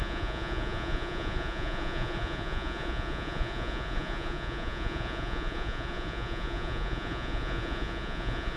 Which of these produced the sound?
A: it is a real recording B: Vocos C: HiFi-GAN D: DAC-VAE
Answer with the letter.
B